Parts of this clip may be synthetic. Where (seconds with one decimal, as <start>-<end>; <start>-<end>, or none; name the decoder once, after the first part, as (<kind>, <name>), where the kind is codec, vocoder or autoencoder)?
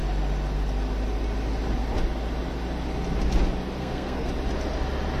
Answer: 3.8-4.3 (codec, SNAC)